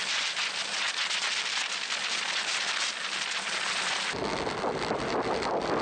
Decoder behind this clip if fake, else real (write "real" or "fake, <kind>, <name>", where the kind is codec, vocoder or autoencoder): real